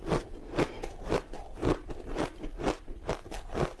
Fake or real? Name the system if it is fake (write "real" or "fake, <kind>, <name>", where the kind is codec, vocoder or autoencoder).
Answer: real